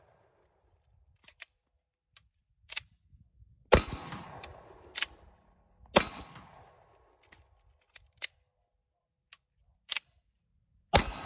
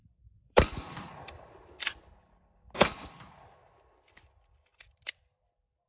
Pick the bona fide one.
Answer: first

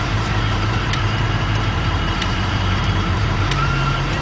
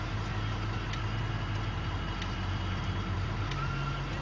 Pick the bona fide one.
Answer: second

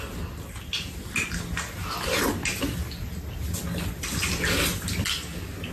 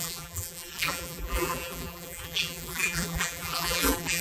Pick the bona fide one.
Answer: first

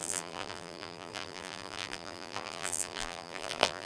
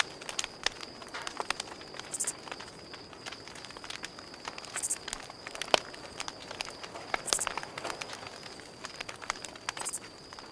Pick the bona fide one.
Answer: second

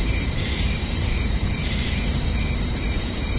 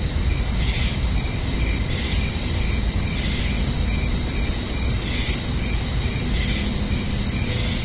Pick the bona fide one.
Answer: second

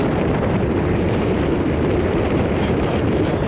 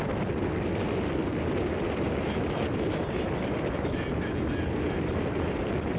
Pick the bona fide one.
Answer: second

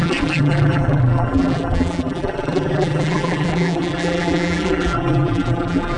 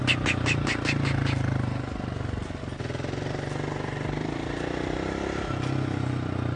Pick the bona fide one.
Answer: second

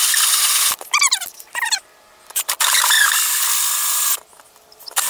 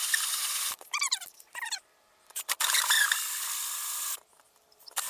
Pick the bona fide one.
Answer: first